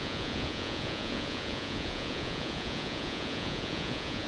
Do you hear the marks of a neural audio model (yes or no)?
yes